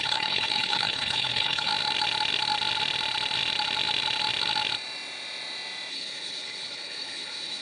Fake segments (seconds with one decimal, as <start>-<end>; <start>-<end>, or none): 0.0-1.7; 5.9-7.6